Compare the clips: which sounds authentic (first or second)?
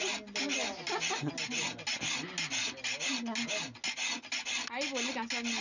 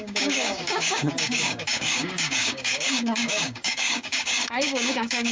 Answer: first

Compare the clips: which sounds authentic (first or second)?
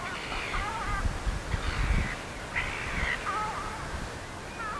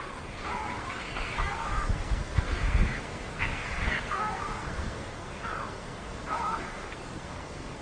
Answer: first